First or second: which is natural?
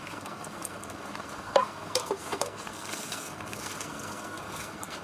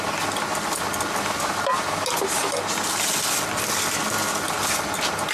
second